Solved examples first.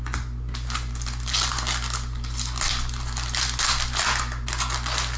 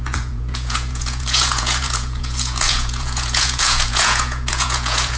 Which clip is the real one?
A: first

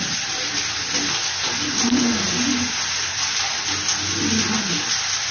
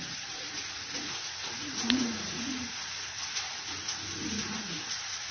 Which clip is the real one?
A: first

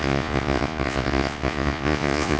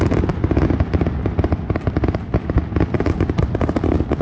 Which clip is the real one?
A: second